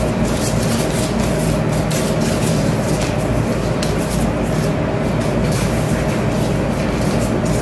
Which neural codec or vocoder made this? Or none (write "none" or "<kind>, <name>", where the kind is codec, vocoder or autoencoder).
none